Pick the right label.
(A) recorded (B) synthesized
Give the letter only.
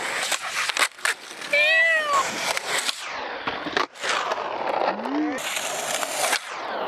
A